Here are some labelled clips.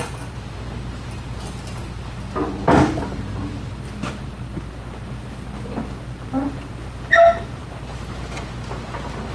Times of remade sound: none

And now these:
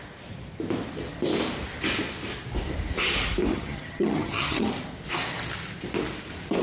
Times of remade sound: 3.5-4.7